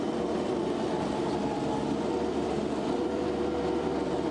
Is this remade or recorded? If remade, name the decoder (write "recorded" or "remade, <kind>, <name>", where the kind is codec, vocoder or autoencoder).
remade, vocoder, BigVGAN v2